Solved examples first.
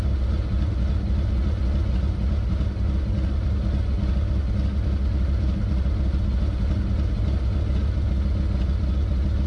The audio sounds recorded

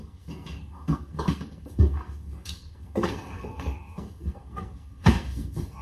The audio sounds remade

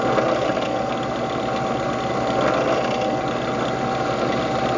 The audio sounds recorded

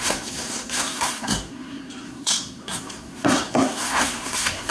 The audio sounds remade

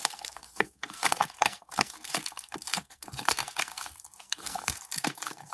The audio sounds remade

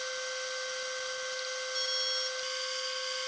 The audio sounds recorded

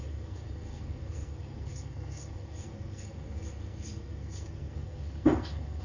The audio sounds remade